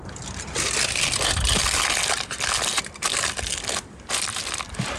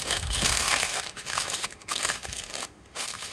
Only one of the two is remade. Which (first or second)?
second